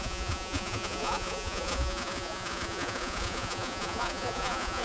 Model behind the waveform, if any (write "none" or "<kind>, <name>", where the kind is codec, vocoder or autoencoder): vocoder, Vocos